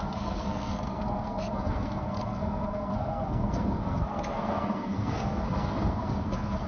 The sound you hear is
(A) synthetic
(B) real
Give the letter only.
A